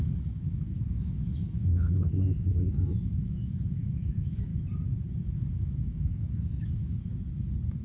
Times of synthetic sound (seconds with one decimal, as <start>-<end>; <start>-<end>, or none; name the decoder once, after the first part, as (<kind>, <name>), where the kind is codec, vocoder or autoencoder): 0.0-4.5 (autoencoder, DAC-VAE); 5.5-7.1